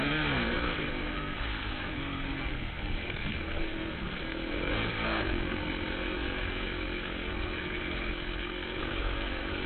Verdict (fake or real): fake